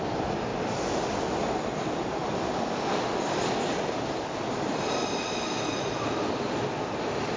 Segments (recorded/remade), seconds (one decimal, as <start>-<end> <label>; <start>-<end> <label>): 0.0-7.4 recorded